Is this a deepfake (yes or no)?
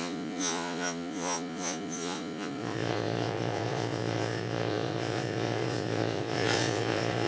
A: yes